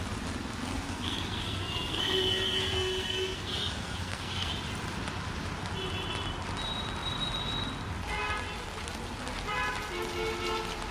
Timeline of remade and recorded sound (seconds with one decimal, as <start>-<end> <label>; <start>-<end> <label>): 0.0-0.7 recorded; 0.7-4.5 remade; 4.5-10.9 recorded

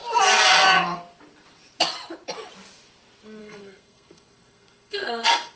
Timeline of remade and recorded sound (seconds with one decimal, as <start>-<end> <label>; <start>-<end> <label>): 0.0-3.4 recorded; 3.4-5.6 remade